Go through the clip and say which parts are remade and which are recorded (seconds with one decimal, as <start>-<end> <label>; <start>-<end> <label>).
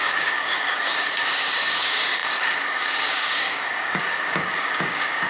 0.0-5.3 remade